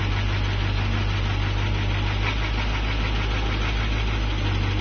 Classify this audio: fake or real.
real